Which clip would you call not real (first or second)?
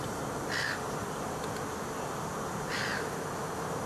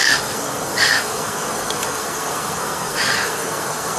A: second